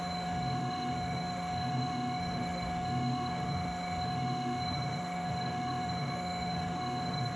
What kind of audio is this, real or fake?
fake